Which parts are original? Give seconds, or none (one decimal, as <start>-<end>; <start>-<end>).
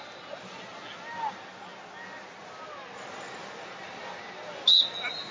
0.0-5.3